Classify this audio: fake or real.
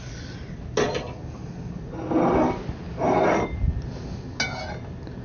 real